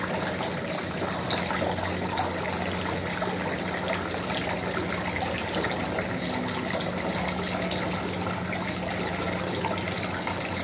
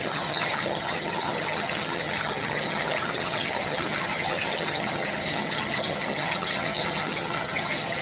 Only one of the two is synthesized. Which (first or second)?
second